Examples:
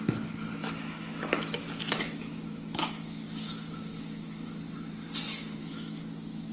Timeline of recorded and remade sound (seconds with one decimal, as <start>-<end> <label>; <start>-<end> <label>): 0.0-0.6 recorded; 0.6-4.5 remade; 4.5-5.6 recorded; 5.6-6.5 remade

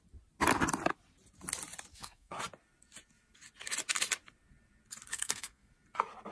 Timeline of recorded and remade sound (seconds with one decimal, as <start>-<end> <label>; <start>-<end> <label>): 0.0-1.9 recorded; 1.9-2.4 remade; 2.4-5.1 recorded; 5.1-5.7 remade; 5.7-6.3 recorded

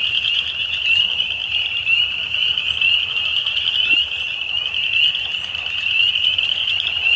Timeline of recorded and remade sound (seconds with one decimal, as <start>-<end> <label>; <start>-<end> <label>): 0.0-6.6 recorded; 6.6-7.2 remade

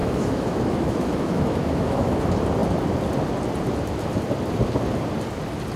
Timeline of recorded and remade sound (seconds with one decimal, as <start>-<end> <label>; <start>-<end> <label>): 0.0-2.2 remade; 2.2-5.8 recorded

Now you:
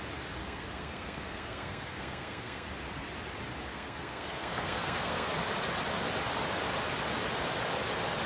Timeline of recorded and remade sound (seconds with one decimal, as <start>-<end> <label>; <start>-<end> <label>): 0.0-0.4 recorded; 0.4-2.7 remade; 2.7-3.7 recorded; 3.7-5.3 remade; 5.3-8.3 recorded